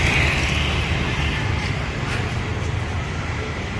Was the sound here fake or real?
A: real